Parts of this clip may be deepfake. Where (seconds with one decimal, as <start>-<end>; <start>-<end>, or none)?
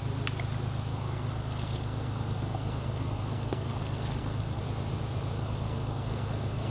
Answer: 0.9-4.6; 5.3-6.7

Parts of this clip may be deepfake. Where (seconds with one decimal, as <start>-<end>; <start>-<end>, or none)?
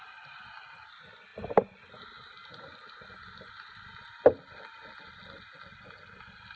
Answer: none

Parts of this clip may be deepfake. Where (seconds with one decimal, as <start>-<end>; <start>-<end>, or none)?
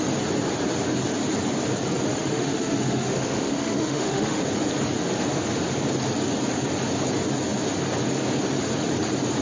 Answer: 2.1-4.4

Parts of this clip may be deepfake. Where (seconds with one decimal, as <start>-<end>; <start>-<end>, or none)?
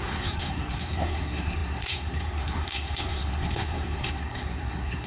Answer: 0.0-5.1